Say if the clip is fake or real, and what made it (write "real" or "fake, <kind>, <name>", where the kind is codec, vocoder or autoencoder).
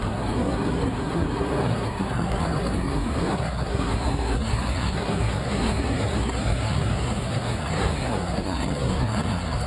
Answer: fake, codec, SNAC